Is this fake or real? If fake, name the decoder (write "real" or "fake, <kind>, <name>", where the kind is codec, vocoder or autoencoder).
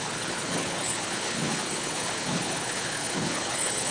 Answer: fake, codec, HILCodec